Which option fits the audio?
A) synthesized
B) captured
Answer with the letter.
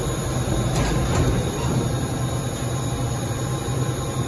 B